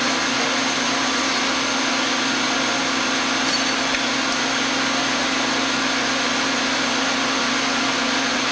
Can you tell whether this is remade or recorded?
recorded